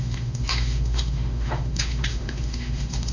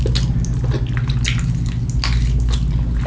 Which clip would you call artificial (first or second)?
first